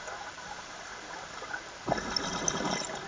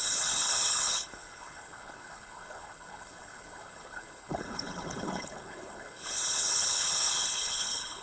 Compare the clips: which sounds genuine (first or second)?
first